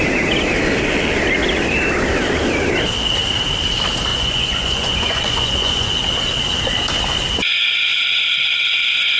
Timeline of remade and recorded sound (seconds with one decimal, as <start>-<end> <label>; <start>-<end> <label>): 0.0-4.1 recorded; 4.1-5.9 remade; 5.9-9.2 recorded